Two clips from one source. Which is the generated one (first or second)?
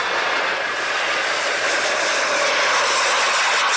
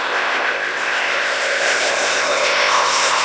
second